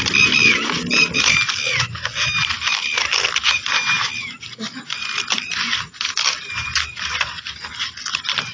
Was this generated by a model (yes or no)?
no